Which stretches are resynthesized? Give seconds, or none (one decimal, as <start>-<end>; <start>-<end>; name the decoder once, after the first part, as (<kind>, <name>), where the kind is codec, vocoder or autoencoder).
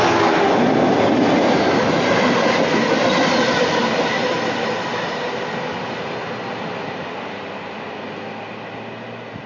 none